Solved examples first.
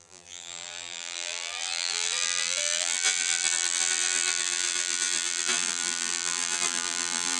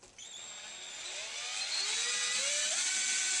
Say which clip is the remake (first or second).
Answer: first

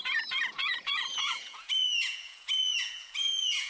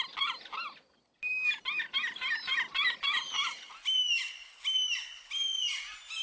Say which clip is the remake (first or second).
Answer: first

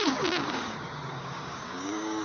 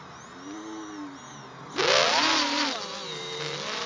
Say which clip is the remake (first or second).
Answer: first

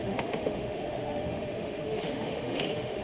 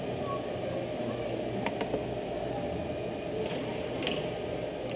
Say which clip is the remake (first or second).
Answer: first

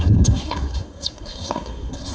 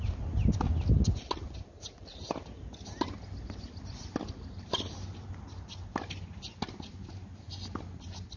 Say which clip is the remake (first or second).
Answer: first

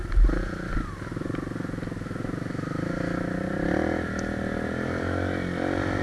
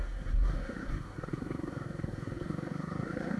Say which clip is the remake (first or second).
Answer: second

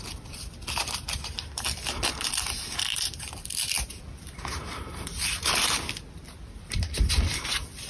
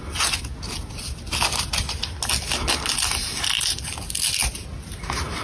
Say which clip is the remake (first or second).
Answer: first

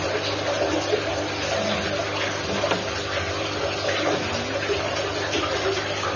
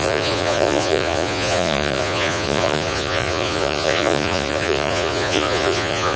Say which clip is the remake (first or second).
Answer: second